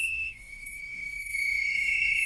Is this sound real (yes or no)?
no